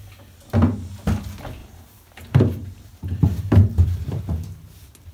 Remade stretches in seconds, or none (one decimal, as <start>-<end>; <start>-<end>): 1.6-4.2